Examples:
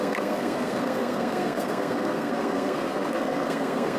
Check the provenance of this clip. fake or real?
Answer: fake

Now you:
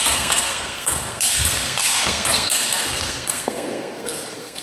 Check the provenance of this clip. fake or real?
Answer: fake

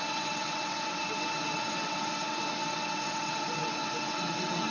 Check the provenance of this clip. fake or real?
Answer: fake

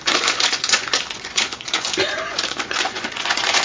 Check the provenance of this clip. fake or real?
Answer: fake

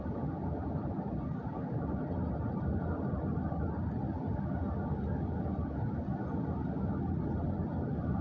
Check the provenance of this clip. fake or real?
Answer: real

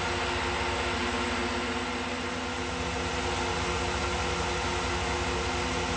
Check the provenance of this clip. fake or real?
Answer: real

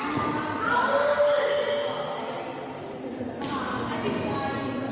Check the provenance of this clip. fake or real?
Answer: real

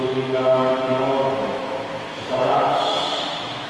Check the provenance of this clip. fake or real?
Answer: fake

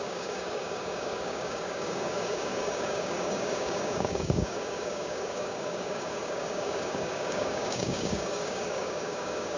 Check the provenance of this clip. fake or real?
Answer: fake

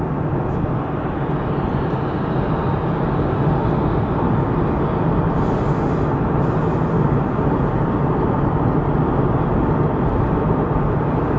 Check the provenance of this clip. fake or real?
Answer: real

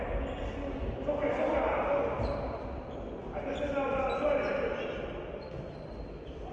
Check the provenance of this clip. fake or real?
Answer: real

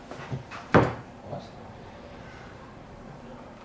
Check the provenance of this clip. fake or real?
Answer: fake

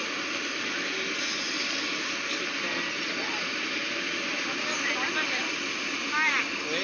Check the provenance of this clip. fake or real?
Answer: real